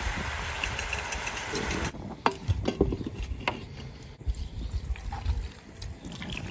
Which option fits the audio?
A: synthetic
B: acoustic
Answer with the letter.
B